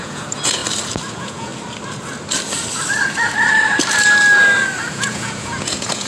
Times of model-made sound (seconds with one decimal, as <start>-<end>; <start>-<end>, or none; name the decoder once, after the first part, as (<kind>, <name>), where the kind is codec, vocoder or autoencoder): 0.0-0.6 (vocoder, Vocos); 1.1-1.5; 4.9-6.1